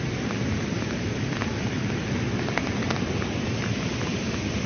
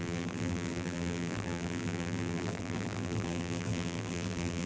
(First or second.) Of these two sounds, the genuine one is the first